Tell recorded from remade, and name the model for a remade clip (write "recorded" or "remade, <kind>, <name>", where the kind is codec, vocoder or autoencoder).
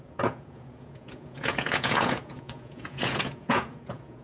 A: remade, vocoder, Vocos